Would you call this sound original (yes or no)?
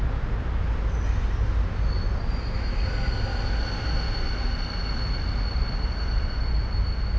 yes